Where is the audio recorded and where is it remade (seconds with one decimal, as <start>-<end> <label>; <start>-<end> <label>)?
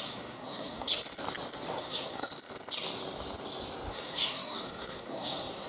0.0-0.9 remade; 0.9-1.8 recorded; 1.8-2.3 remade; 2.3-3.9 recorded; 3.9-5.7 remade